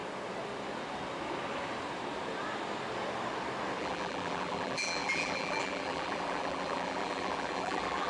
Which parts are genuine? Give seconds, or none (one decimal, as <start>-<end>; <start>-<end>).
0.0-3.8